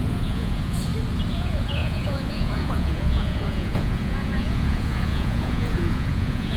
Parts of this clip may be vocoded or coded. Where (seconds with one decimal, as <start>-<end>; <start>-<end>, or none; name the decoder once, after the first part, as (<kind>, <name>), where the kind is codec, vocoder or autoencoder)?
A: 0.0-0.9 (vocoder, Vocos); 1.4-6.6